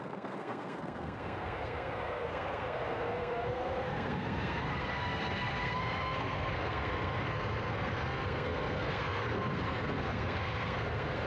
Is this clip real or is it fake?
fake